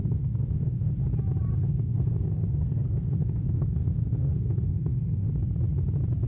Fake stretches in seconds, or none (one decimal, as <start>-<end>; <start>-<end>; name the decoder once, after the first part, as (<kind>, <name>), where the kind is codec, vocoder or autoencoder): 0.0-0.9 (codec, SNAC); 1.5-5.3